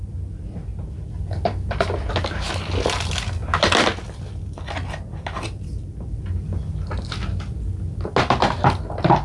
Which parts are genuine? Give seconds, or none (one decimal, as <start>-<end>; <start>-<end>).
0.0-9.2